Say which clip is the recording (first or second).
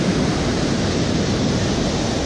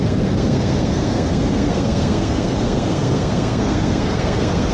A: first